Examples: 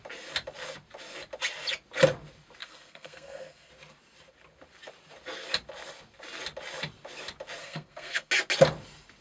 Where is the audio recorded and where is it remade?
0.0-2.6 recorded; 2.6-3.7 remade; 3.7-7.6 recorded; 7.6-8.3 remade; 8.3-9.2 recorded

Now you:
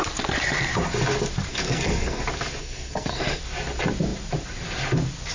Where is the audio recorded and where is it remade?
0.0-1.5 recorded; 1.5-2.2 remade; 2.2-2.6 recorded; 2.6-3.4 remade; 3.4-5.3 recorded

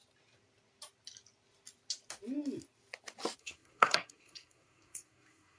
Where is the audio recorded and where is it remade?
0.0-3.4 recorded; 3.4-5.6 remade

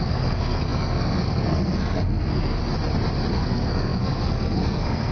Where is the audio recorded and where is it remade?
0.0-2.6 remade; 2.6-3.3 recorded; 3.3-5.1 remade

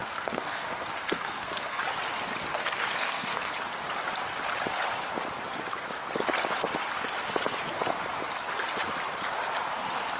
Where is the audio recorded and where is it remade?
0.0-1.8 remade; 1.8-2.5 recorded; 2.5-3.5 remade; 3.5-10.2 recorded

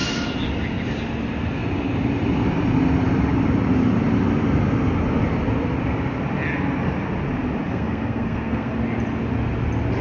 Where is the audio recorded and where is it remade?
0.0-7.7 recorded; 7.7-8.7 remade; 8.7-10.0 recorded

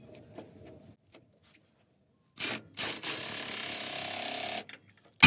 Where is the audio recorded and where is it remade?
0.0-5.3 recorded

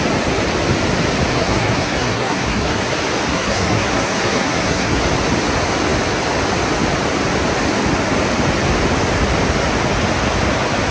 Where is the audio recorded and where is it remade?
0.0-1.3 recorded; 1.3-2.9 remade; 2.9-3.3 recorded; 3.3-5.0 remade; 5.0-10.9 recorded